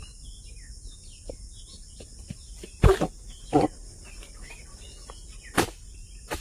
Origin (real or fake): real